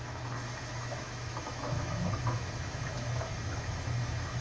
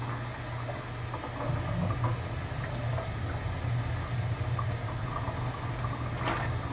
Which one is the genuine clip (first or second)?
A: second